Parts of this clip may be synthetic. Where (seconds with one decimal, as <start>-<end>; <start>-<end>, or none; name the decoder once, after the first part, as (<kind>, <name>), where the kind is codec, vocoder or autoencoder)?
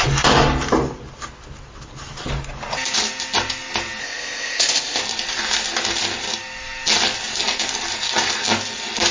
4.0-5.0 (codec, ZipCodec)